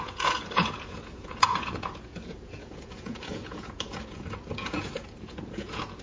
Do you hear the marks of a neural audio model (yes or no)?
yes